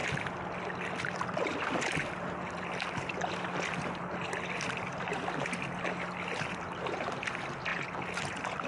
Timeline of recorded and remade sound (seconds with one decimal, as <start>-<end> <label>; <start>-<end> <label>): 0.0-8.7 recorded